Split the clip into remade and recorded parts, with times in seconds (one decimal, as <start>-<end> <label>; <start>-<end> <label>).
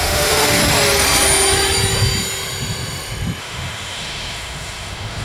0.0-0.6 remade; 0.6-3.4 recorded; 3.4-5.2 remade